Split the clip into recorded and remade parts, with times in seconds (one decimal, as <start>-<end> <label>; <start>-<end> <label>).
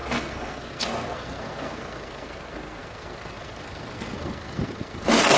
0.0-5.4 remade